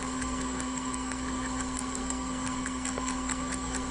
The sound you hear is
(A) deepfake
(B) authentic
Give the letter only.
A